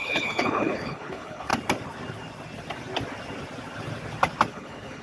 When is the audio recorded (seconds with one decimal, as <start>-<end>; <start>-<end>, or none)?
1.5-4.5